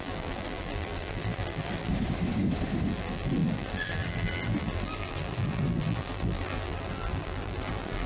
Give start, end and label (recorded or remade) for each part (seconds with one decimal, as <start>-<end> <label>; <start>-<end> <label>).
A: 0.0-1.9 remade; 1.9-2.9 recorded; 2.9-8.1 remade